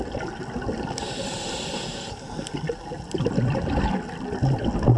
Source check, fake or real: real